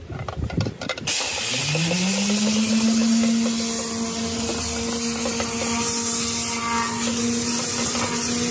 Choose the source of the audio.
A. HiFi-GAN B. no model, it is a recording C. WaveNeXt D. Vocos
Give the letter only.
B